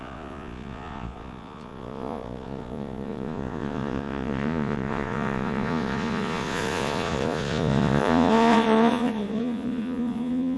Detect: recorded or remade remade